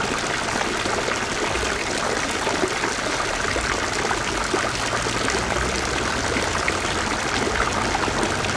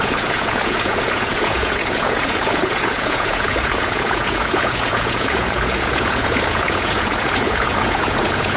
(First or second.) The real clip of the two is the first